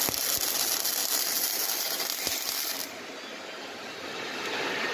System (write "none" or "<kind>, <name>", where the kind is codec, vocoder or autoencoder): none